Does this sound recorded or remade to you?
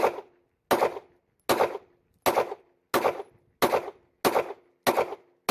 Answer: recorded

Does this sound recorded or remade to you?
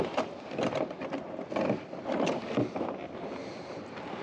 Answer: recorded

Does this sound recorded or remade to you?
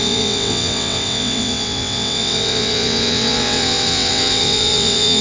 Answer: remade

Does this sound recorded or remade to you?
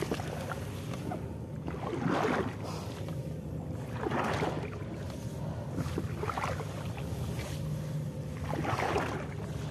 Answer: recorded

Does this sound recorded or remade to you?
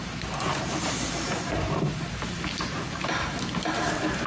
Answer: remade